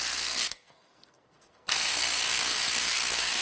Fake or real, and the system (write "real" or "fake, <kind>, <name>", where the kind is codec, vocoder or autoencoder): fake, codec, SNAC